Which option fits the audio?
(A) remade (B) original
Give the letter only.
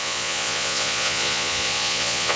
A